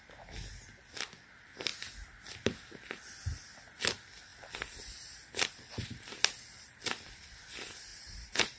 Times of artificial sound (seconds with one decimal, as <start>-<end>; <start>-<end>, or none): 7.9-8.6